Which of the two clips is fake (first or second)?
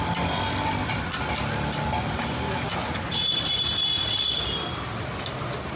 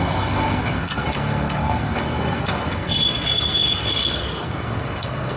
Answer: second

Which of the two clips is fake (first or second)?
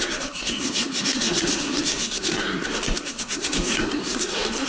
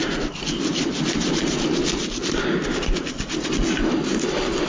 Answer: first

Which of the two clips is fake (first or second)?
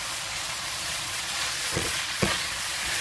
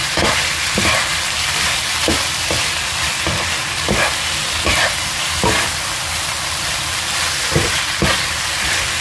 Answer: first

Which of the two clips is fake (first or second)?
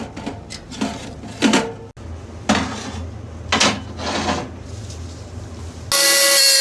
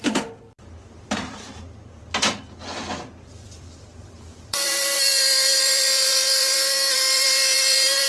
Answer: second